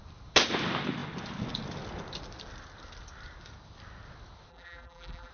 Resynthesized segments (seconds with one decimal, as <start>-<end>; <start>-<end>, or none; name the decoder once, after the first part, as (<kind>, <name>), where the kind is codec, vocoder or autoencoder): 4.5-5.3 (vocoder, BigVGAN v2)